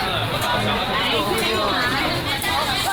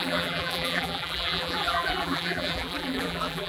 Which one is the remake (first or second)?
second